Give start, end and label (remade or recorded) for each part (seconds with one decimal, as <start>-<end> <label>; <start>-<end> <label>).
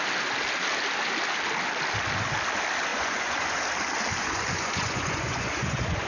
0.0-2.9 recorded; 2.9-3.6 remade; 3.6-4.2 recorded; 4.2-6.1 remade